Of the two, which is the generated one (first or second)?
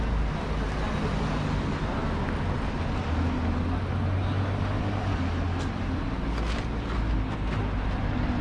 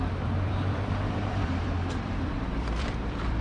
second